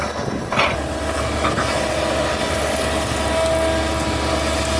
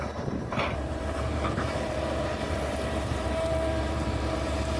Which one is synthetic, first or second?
second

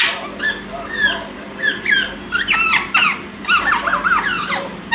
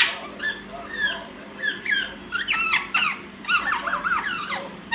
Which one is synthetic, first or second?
second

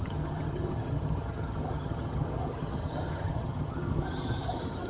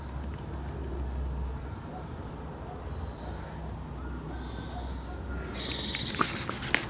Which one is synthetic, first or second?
first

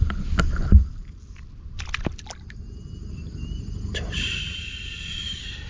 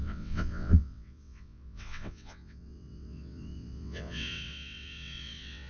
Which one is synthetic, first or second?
second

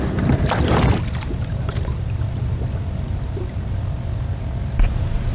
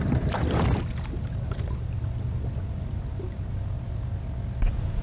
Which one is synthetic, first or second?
first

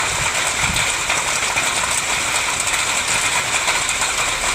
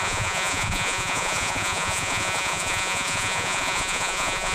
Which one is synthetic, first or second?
second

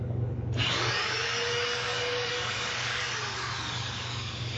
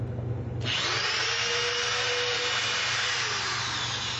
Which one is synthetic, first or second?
first